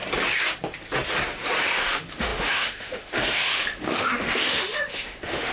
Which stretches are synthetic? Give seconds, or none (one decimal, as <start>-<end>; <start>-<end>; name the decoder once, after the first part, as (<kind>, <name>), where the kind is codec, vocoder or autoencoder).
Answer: 1.6-5.5 (autoencoder, DAC-VAE)